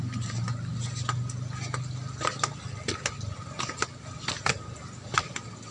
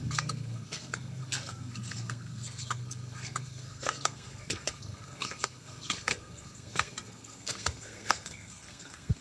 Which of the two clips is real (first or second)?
first